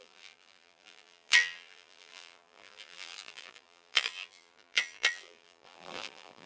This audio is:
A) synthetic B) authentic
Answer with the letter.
A